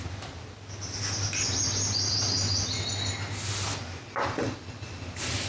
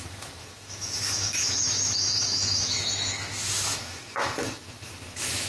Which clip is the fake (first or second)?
second